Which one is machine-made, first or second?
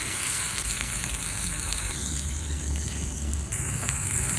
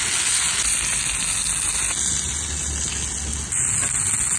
first